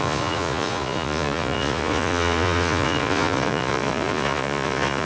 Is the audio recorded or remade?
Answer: remade